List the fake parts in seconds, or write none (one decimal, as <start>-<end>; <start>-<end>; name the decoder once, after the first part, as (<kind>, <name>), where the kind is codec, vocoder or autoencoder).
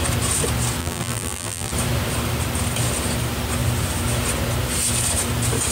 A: 0.8-1.7 (vocoder, BigVGAN v2)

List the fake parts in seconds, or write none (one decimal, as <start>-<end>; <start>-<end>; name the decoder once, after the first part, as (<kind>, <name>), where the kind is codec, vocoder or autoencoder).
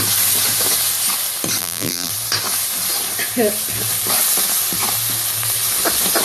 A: 1.6-2.1 (vocoder, BigVGAN v2)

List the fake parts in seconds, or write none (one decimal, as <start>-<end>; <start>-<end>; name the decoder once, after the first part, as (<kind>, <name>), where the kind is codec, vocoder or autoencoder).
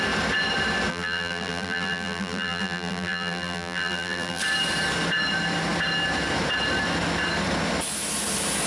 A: 0.9-4.4 (vocoder, BigVGAN v2)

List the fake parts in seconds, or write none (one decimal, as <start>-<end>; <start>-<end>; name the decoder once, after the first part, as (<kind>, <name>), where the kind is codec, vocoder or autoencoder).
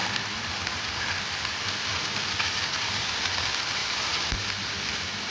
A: none